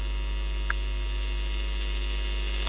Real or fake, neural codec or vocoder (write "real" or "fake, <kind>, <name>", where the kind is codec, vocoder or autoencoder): real